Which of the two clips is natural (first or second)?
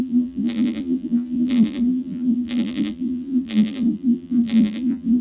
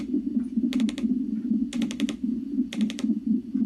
second